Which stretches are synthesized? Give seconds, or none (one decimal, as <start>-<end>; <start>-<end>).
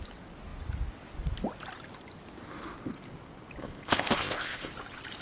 3.6-4.7